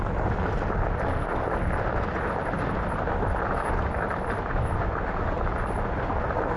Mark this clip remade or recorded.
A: recorded